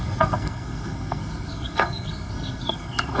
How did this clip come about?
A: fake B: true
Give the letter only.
A